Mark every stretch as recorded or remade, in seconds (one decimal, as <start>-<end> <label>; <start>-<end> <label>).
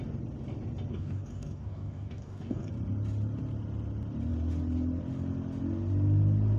0.0-0.9 recorded; 0.9-2.7 remade; 2.7-6.6 recorded